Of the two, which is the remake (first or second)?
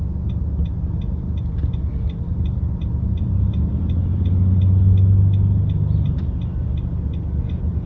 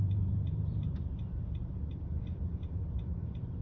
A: second